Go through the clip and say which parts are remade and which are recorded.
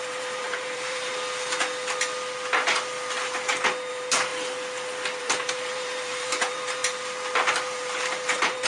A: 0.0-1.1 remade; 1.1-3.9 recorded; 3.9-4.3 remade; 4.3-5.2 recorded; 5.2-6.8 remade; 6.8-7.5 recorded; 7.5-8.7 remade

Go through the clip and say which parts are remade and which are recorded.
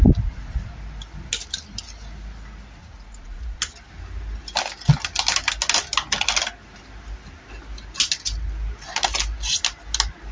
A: 0.0-2.8 recorded; 2.8-3.6 remade; 3.6-10.3 recorded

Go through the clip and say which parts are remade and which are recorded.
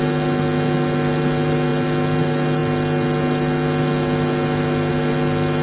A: 0.0-5.6 recorded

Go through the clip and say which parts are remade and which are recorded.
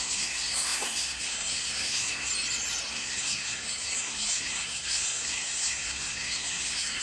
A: 0.0-2.3 remade; 2.3-2.9 recorded; 2.9-7.0 remade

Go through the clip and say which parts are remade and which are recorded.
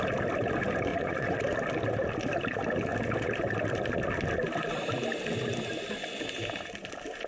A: 0.0-0.9 recorded; 0.9-1.4 remade; 1.4-7.3 recorded